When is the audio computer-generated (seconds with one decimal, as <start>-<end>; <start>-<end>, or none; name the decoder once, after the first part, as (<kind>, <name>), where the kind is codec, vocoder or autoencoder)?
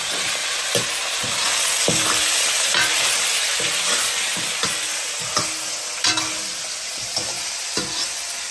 0.4-1.5 (vocoder, BigVGAN v2); 2.2-3.8